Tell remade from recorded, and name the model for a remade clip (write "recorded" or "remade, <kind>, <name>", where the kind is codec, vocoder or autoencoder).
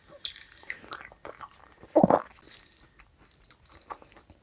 recorded